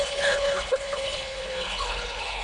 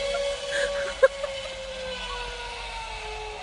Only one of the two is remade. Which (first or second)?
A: first